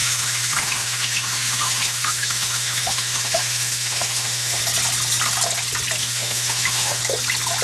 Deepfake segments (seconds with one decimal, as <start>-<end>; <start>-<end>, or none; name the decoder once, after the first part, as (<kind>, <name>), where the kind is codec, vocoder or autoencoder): 0.0-4.6 (autoencoder, DAC-VAE); 6.0-7.0